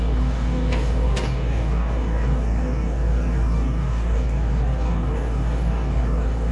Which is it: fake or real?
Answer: fake